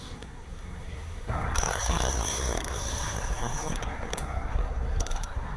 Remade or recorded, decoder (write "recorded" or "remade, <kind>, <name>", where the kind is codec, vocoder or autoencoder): remade, codec, SNAC